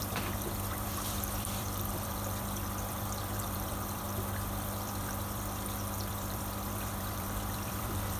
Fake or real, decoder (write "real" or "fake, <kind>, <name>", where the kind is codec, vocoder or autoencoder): fake, vocoder, BigVGAN v2